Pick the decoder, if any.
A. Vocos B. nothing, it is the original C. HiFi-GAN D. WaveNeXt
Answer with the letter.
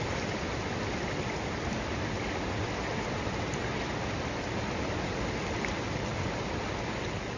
B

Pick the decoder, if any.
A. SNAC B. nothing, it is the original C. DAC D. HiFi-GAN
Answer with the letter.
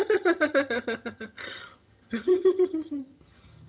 D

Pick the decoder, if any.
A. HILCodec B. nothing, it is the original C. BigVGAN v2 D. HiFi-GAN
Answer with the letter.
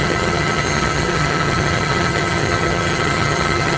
D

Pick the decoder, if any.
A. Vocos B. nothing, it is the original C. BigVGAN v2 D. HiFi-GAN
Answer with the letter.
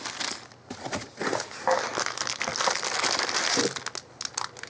B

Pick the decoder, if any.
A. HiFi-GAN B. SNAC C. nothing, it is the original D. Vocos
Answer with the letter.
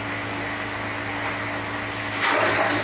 C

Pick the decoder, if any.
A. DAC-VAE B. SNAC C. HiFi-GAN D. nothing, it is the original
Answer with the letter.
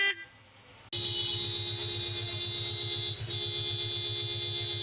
D